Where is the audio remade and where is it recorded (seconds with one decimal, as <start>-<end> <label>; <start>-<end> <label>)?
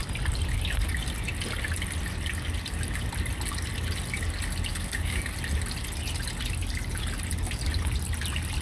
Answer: 0.0-4.7 recorded; 4.7-5.3 remade; 5.3-8.6 recorded